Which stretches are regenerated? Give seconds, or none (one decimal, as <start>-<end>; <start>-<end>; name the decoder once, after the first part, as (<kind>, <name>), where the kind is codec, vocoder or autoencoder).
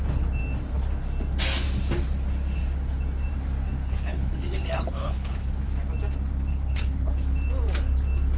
3.8-5.5 (codec, HILCodec); 6.5-7.1